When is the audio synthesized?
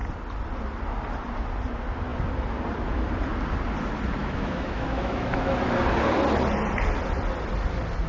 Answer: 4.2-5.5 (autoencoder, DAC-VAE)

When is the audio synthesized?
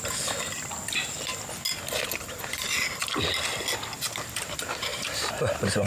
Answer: none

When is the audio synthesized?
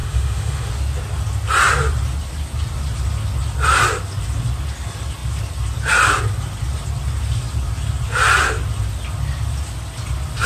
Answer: 0.0-0.7 (autoencoder, DAC-VAE)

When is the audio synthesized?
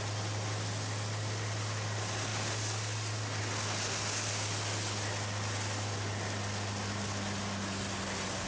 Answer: none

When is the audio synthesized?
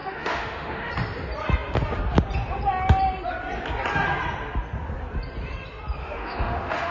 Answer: 0.0-0.9 (autoencoder, DAC-VAE); 6.0-6.9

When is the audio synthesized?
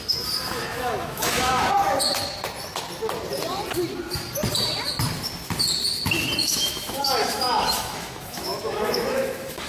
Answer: 0.7-1.6 (autoencoder, DAC-VAE); 6.4-9.7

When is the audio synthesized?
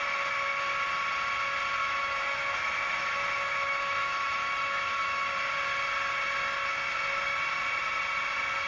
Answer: 1.8-5.3 (autoencoder, DAC-VAE)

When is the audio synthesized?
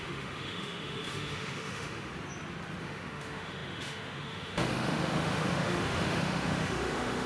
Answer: 0.0-2.1 (autoencoder, DAC-VAE); 2.8-7.3